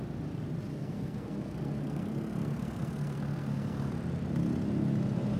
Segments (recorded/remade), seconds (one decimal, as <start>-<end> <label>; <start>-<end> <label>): 0.0-0.7 recorded; 0.7-3.9 remade; 3.9-5.4 recorded